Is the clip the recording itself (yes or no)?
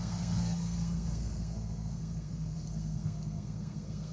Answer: no